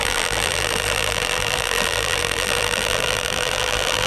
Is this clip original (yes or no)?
no